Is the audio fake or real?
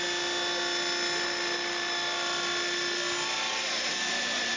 real